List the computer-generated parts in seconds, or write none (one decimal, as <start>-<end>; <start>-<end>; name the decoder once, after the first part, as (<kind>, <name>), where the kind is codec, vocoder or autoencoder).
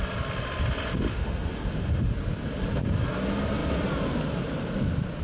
1.1-2.1 (autoencoder, DAC-VAE)